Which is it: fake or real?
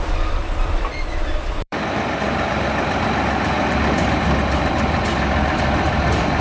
fake